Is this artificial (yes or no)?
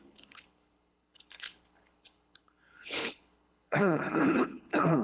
yes